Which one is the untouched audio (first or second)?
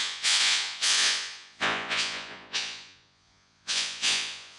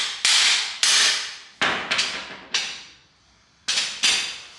second